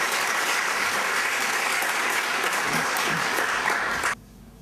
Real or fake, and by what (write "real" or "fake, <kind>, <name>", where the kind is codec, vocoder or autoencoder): fake, codec, DAC